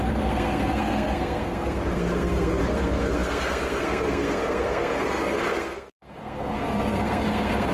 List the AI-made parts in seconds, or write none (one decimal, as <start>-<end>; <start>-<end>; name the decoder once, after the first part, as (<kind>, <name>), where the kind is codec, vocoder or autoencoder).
0.0-7.7 (codec, SNAC)